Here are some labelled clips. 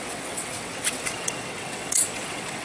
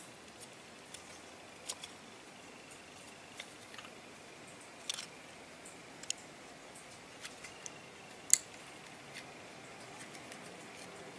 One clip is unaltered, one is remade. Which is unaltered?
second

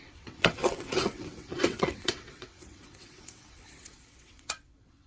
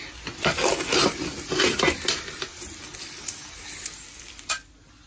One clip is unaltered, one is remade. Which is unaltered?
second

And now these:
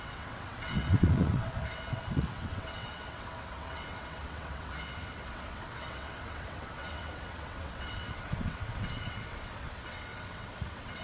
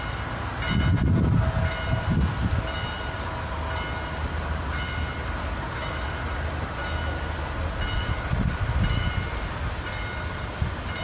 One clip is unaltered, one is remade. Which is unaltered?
second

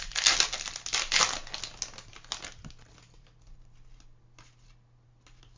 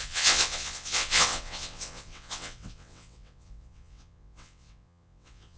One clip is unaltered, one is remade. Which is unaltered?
first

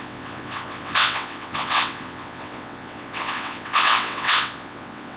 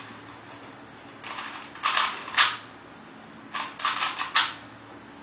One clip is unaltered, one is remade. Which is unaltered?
second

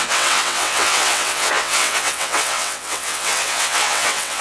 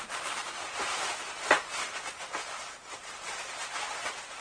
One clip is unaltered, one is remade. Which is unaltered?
second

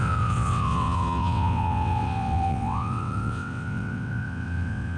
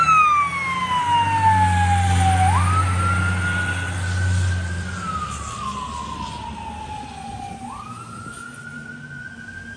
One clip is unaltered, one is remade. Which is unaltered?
second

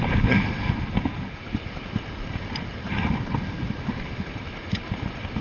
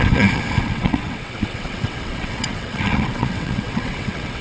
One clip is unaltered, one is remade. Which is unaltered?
first